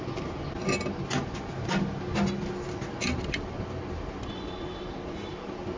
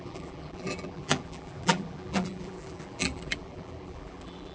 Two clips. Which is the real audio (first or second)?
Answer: first